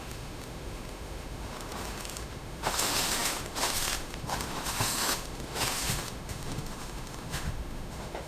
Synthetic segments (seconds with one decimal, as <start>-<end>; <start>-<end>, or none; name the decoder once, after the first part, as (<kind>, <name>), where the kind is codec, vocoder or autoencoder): 0.0-8.3 (autoencoder, DAC-VAE)

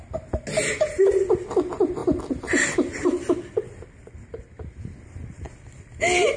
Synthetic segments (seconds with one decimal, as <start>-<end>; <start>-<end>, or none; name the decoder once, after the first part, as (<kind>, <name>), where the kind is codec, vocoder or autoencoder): none

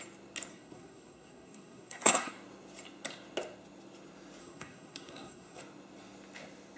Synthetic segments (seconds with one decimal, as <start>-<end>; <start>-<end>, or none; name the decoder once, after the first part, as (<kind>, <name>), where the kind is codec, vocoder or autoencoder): 0.5-2.3 (codec, SNAC); 4.4-5.6

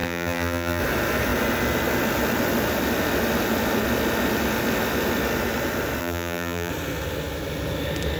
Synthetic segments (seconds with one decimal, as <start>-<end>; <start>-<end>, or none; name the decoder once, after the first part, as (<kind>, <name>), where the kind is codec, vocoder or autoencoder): 0.0-0.8 (vocoder, BigVGAN v2); 6.0-6.7

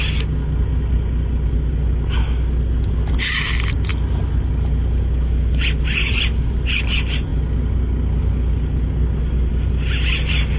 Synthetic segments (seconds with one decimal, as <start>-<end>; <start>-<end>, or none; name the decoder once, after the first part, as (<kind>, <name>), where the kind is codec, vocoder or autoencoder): none

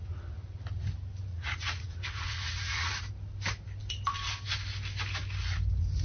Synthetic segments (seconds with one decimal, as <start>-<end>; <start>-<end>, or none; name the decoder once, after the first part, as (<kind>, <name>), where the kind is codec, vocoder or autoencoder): 1.3-3.0 (vocoder, Vocos)

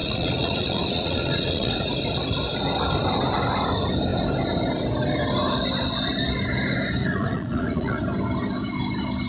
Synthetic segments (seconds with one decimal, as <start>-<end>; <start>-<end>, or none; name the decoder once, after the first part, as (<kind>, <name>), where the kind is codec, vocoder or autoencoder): 0.0-1.8 (vocoder, Vocos); 7.0-8.0

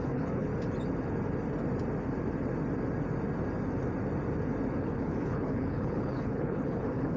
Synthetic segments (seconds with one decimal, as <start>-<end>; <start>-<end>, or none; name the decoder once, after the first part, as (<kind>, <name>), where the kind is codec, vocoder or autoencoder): 0.0-0.5 (codec, HILCodec); 4.8-7.2